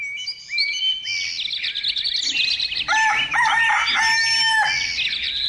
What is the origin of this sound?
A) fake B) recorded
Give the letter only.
B